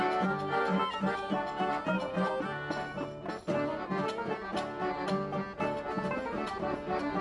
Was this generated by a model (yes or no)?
no